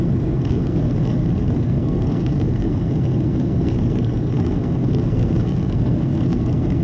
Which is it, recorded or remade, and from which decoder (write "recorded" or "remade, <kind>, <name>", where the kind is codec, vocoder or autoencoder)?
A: remade, codec, SNAC